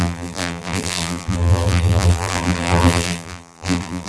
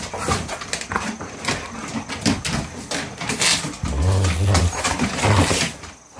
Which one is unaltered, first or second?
second